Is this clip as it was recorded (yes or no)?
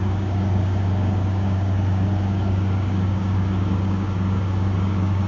no